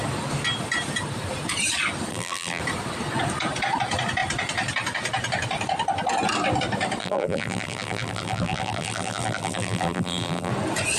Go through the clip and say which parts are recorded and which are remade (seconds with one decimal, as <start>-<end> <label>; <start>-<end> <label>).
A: 0.0-2.1 recorded; 2.1-2.6 remade; 2.6-7.0 recorded; 7.0-10.5 remade; 10.5-11.0 recorded